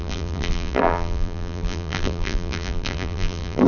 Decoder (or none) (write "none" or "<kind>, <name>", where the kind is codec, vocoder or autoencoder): vocoder, BigVGAN v2